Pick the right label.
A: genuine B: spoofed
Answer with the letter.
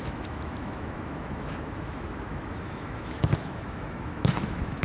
B